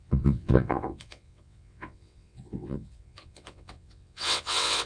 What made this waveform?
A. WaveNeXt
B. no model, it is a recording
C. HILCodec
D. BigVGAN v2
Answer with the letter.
A